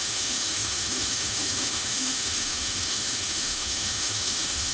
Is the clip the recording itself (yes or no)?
no